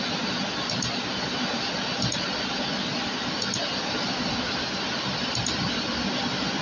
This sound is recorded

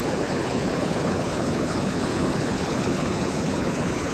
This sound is remade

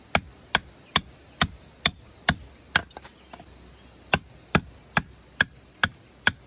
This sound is recorded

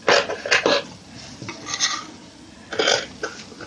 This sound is recorded